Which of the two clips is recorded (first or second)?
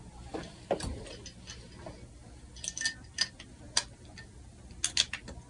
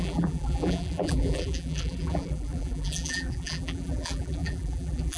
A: first